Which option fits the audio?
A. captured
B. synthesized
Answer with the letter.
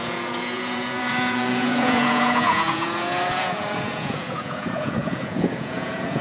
B